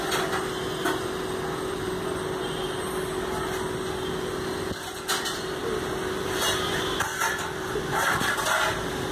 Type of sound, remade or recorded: recorded